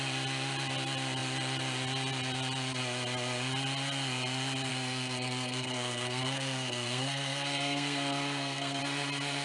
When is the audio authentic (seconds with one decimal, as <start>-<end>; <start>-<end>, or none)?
0.0-4.7; 8.8-9.4